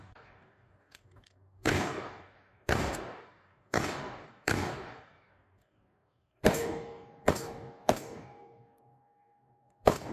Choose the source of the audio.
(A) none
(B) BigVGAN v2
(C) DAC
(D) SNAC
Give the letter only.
C